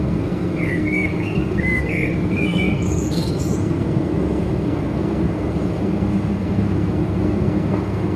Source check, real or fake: fake